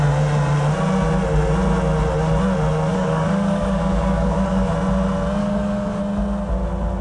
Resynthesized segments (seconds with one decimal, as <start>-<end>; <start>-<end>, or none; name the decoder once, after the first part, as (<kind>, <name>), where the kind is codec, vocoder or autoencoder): 2.9-4.7 (codec, DAC); 5.4-6.0